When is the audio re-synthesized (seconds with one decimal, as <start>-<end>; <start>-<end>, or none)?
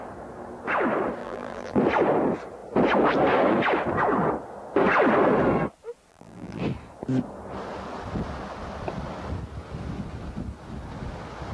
1.2-1.8; 6.1-6.6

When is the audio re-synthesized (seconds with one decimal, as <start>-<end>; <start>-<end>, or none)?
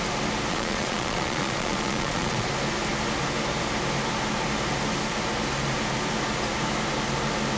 0.5-2.5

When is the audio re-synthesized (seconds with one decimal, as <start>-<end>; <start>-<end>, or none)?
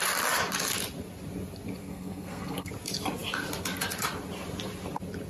1.8-2.7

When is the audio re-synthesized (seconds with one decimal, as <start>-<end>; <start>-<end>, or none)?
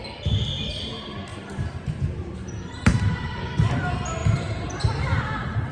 1.3-3.7; 4.2-5.7